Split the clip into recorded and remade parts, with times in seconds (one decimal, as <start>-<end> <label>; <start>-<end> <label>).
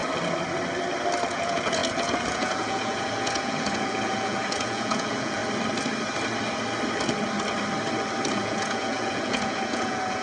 0.0-1.3 recorded; 1.3-5.4 remade; 5.4-8.3 recorded; 8.3-10.2 remade